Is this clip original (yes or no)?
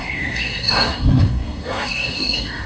no